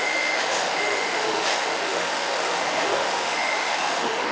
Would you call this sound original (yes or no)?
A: no